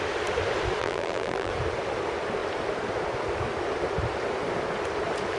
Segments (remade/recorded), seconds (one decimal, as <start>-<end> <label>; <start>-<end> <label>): 0.0-0.8 recorded; 0.8-1.5 remade; 1.5-5.4 recorded